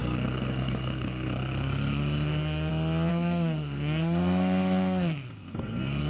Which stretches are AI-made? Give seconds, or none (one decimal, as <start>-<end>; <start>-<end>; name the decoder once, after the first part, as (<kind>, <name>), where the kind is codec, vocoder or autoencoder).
0.0-2.7 (codec, SNAC); 3.1-6.1